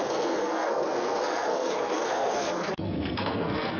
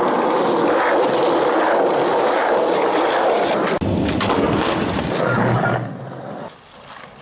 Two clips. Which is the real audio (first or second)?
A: second